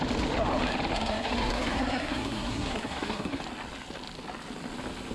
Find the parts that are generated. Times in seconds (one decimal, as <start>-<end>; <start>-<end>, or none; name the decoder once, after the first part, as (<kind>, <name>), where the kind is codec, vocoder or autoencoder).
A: 0.9-3.4 (codec, SNAC)